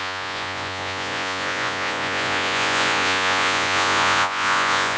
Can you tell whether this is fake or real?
fake